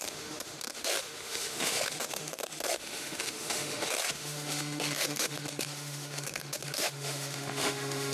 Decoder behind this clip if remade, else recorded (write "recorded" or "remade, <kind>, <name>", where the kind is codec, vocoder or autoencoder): remade, autoencoder, DAC-VAE